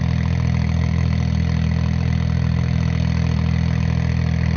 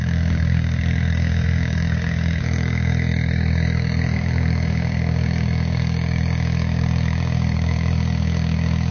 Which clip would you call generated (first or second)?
second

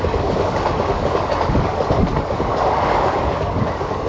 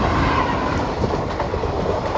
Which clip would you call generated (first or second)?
first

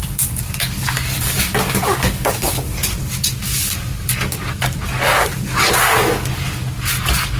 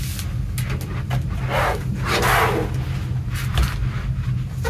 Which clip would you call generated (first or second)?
first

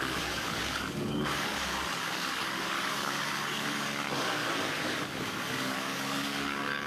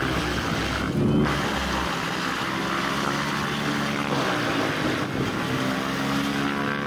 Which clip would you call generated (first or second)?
first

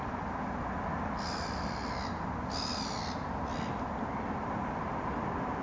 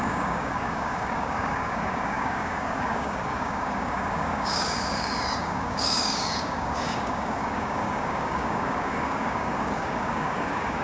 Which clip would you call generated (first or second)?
second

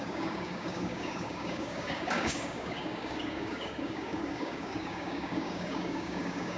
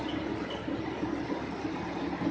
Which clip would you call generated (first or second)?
first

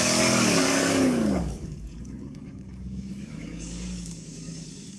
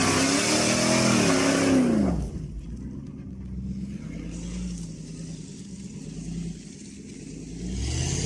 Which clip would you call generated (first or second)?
first